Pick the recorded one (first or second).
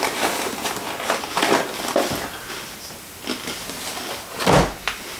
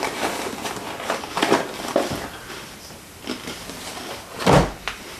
first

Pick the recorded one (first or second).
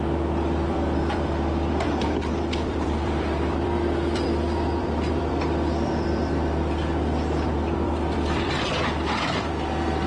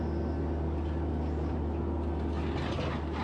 second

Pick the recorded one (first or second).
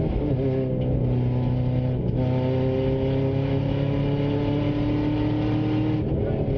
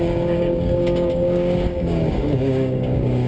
first